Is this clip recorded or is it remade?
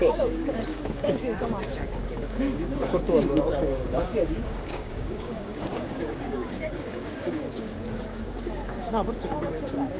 remade